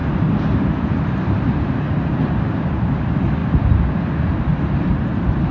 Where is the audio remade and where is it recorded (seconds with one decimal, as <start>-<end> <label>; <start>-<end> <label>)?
0.0-2.3 remade; 2.3-5.5 recorded